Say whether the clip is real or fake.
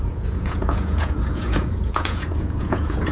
fake